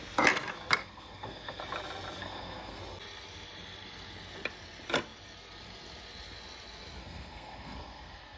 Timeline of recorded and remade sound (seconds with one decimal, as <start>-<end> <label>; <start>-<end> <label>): 0.0-0.8 recorded; 0.8-1.6 remade; 1.6-2.2 recorded; 2.2-2.8 remade; 2.8-7.0 recorded; 7.0-8.4 remade